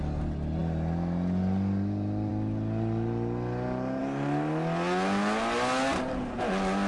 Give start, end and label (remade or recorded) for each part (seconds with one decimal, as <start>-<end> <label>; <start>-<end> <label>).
0.0-6.9 recorded

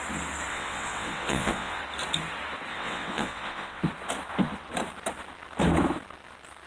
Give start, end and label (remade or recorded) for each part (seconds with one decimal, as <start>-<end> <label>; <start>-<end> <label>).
0.0-0.5 recorded; 0.5-1.8 remade; 1.8-2.7 recorded; 2.7-3.8 remade; 3.8-6.7 recorded

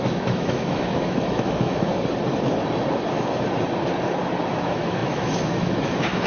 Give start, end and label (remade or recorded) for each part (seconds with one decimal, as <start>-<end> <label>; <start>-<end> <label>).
0.0-1.9 remade; 1.9-4.5 recorded; 4.5-6.3 remade